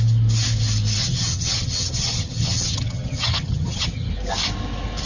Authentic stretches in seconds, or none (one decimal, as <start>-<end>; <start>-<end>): 0.0-1.0; 4.1-5.1